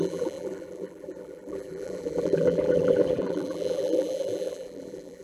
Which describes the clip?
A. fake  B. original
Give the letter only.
A